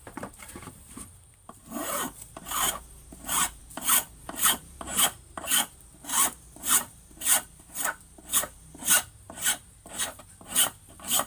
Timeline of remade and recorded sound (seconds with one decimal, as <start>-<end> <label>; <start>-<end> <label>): 0.0-11.3 remade